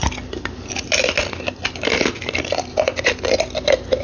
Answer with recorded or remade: recorded